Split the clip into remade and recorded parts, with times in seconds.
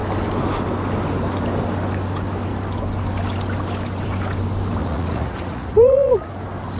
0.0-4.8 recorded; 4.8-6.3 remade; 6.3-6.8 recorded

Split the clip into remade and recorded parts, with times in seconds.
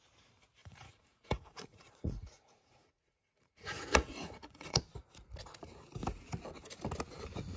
0.0-0.6 recorded; 0.6-4.8 remade; 4.8-7.6 recorded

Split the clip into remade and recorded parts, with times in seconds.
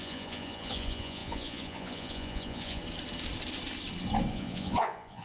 0.0-2.8 remade; 2.8-4.3 recorded; 4.3-5.2 remade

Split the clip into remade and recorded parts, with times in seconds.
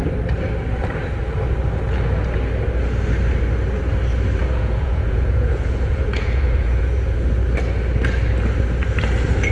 0.0-4.4 recorded; 4.4-7.4 remade; 7.4-9.5 recorded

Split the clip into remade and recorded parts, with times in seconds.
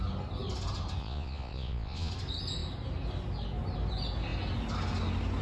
0.0-1.0 recorded; 1.0-2.1 remade; 2.1-5.4 recorded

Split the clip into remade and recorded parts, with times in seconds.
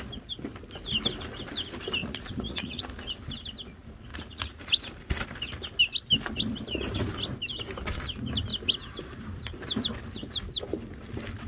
0.0-2.0 recorded; 2.0-2.8 remade; 2.8-4.1 recorded; 4.1-4.6 remade; 4.6-11.5 recorded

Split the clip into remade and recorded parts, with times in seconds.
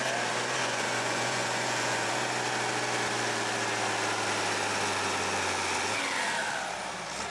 0.0-0.6 recorded; 0.6-2.1 remade; 2.1-7.3 recorded